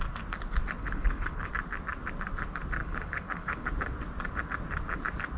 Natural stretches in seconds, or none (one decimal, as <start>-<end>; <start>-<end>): 0.0-0.8; 1.5-2.8; 3.7-5.4

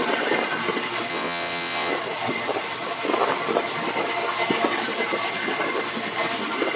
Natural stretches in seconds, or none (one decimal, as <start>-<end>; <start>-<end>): 0.0-1.1; 1.9-6.8

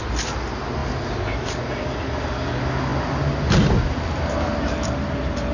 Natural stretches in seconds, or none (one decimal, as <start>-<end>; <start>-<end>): 0.0-5.5

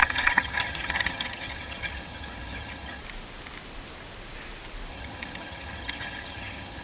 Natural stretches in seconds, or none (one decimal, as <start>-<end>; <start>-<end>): 3.0-4.9

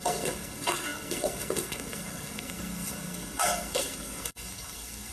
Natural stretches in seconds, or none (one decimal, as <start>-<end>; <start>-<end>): none